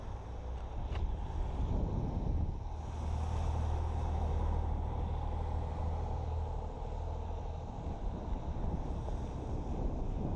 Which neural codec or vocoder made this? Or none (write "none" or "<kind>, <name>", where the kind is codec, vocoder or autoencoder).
none